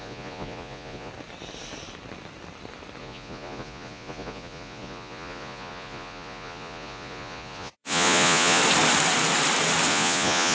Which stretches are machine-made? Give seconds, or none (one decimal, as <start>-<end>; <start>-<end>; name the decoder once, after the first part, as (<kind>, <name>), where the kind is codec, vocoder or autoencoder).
0.0-1.1 (vocoder, Vocos); 3.0-8.6; 9.9-10.5